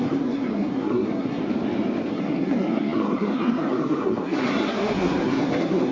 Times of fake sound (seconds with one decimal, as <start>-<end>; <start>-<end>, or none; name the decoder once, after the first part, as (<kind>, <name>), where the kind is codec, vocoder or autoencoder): 0.0-1.4 (codec, SNAC); 2.1-5.9